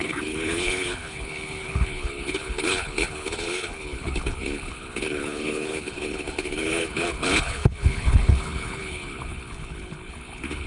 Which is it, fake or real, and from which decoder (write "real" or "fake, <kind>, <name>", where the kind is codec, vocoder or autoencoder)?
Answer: fake, codec, HILCodec